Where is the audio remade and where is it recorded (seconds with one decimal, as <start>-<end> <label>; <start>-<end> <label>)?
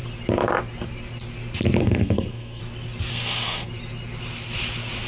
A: 0.0-1.8 recorded; 1.8-2.6 remade; 2.6-3.1 recorded; 3.1-3.7 remade; 3.7-5.1 recorded